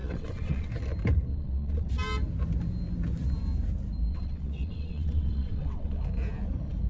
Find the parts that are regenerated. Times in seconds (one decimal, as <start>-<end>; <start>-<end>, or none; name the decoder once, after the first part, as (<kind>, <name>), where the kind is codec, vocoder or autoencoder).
0.0-0.7 (vocoder, WaveNeXt); 1.3-1.9; 4.1-6.0